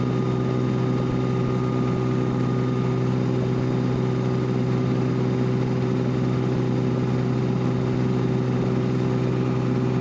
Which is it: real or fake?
real